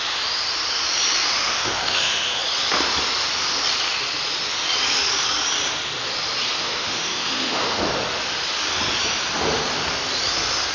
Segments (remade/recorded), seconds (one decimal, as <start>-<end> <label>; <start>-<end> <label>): 0.0-1.3 recorded; 1.3-2.4 remade; 2.4-6.6 recorded; 6.6-7.8 remade; 7.8-10.7 recorded